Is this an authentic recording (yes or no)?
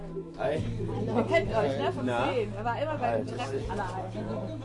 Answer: yes